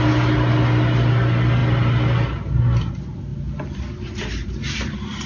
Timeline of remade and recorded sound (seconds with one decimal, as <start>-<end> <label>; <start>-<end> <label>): 0.0-5.3 recorded